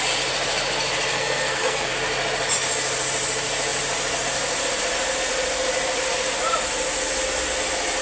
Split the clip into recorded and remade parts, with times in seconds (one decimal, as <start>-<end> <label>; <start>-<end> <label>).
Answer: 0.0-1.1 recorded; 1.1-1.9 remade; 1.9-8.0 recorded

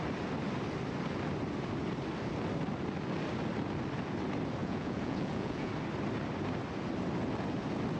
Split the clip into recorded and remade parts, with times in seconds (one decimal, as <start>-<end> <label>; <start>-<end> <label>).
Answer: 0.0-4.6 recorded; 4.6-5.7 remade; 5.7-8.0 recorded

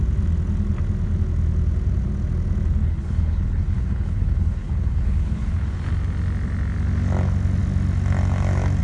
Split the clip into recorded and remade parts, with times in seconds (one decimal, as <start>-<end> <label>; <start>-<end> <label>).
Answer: 0.0-2.8 recorded; 2.8-5.9 remade; 5.9-8.8 recorded